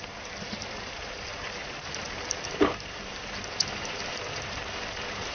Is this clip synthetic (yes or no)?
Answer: yes